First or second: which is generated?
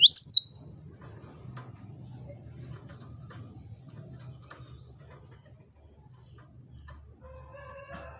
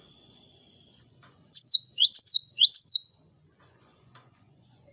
second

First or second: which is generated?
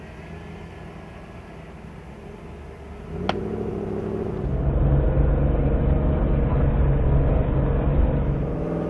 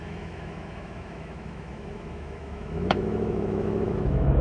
second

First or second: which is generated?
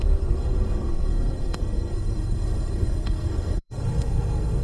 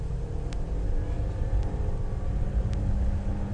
first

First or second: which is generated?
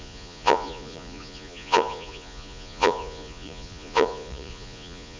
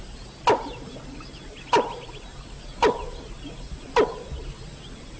first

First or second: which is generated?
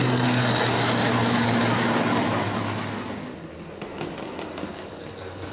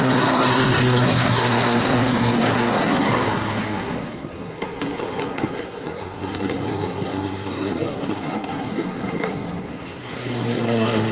second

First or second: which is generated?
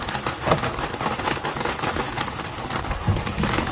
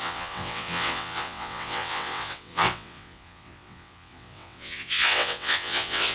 second